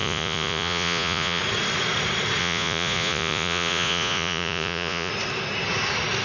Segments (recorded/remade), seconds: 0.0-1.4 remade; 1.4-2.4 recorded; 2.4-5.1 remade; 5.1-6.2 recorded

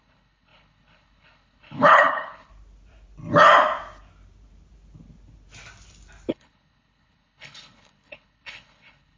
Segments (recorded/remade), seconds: 0.0-2.5 remade; 2.5-6.3 recorded; 6.3-9.2 remade

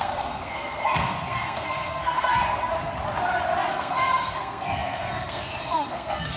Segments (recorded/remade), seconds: 0.0-2.7 remade; 2.7-3.7 recorded; 3.7-6.4 remade

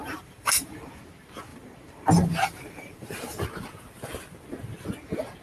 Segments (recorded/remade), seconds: 0.0-1.0 remade; 1.0-1.5 recorded; 1.5-3.4 remade; 3.4-5.4 recorded

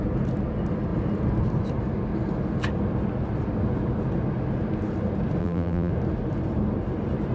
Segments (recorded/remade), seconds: 0.0-5.4 recorded; 5.4-5.9 remade; 5.9-7.3 recorded